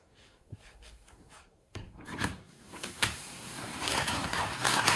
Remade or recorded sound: remade